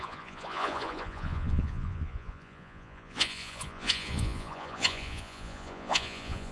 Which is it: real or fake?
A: fake